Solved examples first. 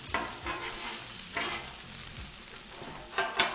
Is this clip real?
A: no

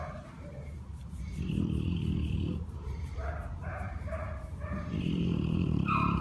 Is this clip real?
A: no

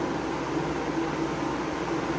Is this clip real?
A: yes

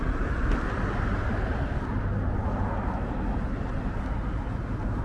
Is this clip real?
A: yes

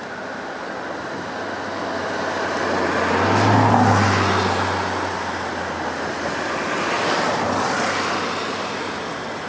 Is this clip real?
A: yes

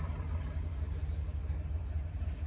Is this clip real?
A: yes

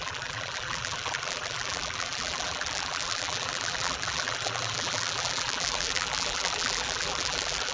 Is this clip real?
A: no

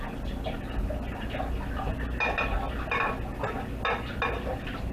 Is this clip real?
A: yes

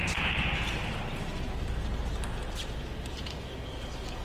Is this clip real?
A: yes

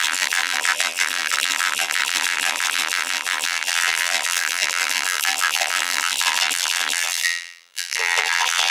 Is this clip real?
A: no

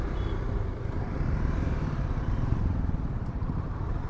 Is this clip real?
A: no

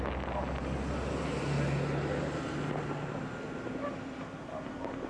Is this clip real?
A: yes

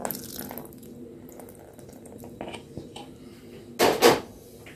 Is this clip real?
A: yes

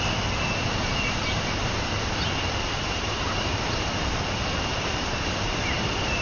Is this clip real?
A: no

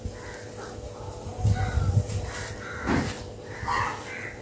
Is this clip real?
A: yes